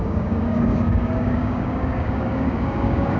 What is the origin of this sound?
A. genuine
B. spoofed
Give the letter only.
B